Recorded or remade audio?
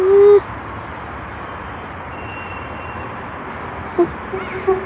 recorded